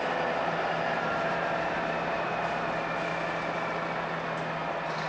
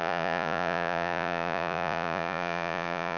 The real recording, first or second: first